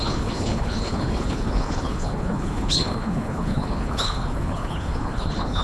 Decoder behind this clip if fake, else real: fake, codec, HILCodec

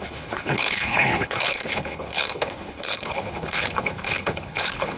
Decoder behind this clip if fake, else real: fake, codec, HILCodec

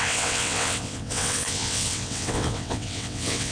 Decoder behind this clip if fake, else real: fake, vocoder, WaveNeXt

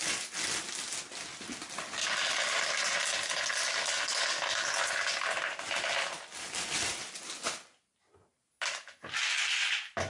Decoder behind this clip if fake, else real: real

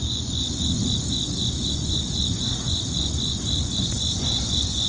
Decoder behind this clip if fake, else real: fake, vocoder, Vocos